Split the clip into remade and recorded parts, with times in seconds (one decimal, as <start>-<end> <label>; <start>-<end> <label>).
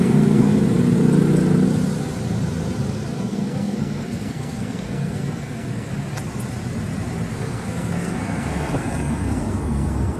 0.0-0.5 remade; 0.5-3.2 recorded; 3.2-5.9 remade; 5.9-7.3 recorded; 7.3-10.2 remade